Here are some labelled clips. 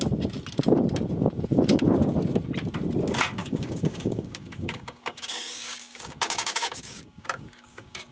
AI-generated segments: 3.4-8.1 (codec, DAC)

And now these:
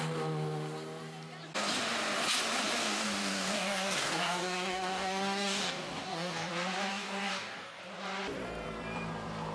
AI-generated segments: 2.8-6.5 (codec, DAC); 6.9-7.8

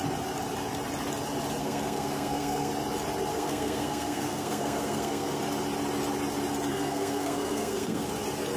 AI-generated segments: 1.6-2.7 (codec, SNAC); 3.3-5.4; 6.7-8.1

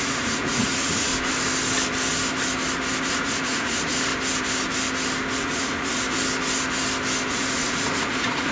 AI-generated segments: 0.0-1.1 (vocoder, Vocos); 3.1-4.1; 5.4-5.9; 7.3-8.5

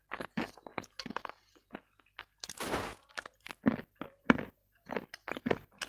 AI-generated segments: 2.9-3.8 (vocoder, BigVGAN v2)

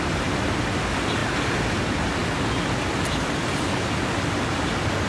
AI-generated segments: none

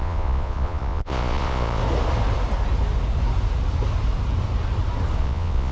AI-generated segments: 0.0-1.8 (vocoder, Vocos); 5.2-5.7

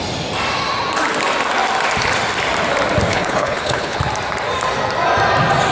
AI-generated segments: 3.1-4.0 (codec, HILCodec)